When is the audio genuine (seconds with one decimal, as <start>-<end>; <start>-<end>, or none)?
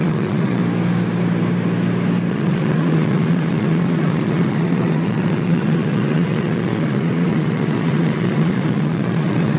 0.6-2.3